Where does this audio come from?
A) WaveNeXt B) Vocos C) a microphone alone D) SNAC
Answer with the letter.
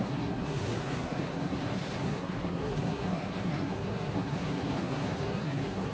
D